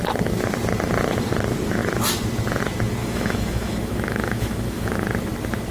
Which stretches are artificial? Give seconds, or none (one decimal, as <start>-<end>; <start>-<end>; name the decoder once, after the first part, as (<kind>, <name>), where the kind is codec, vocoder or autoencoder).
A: 3.0-4.9 (autoencoder, DAC-VAE)